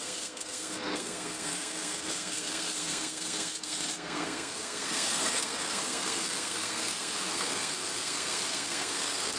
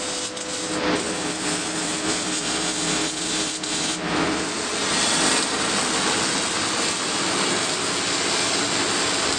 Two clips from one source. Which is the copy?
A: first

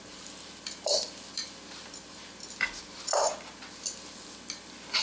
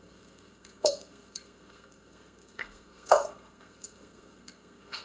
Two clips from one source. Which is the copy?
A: second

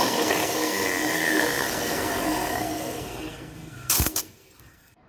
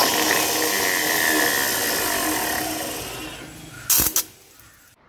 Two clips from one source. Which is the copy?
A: first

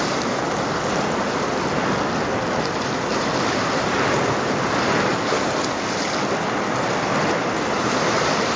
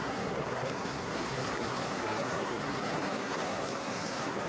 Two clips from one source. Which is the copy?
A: second